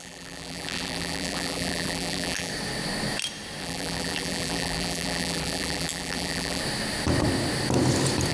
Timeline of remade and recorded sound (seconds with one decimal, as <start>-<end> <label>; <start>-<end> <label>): 0.0-2.5 remade; 2.5-3.6 recorded; 3.6-6.6 remade; 6.6-8.3 recorded